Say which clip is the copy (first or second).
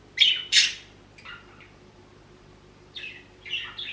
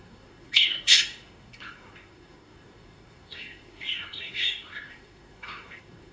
second